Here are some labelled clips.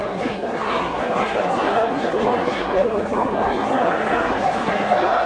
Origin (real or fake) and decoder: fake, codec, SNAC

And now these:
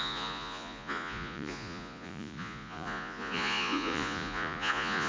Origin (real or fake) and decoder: fake, vocoder, Vocos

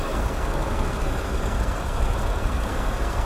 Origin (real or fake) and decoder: fake, codec, SNAC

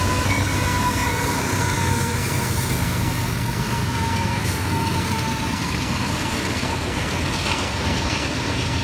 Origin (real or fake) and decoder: fake, codec, SNAC